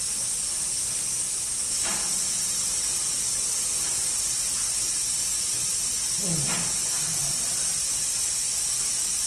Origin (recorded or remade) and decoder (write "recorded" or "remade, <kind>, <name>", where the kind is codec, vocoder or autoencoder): recorded